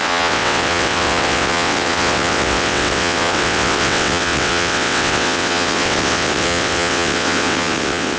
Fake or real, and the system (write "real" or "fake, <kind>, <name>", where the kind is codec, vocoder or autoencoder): fake, vocoder, WaveNeXt